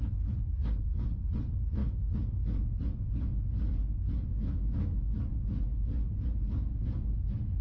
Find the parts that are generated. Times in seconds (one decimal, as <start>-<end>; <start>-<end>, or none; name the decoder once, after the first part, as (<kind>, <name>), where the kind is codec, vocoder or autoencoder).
1.8-2.8 (autoencoder, DAC-VAE); 4.3-5.2